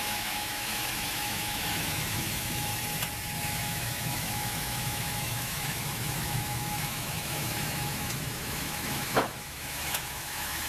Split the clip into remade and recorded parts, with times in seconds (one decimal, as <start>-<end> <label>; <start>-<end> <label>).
0.0-2.7 remade; 2.7-3.4 recorded; 3.4-10.7 remade